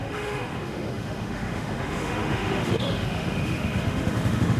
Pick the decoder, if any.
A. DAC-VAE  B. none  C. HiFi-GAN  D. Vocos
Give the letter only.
A